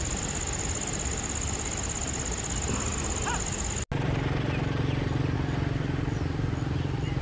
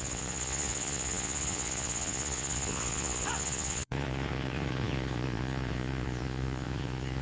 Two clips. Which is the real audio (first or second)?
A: first